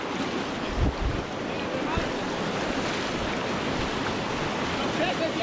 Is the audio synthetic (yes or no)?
no